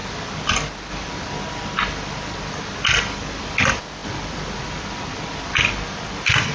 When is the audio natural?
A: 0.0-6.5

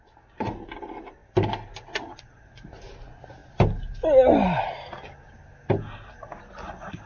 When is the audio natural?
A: 0.0-7.1